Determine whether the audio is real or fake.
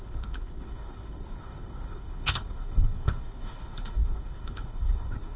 fake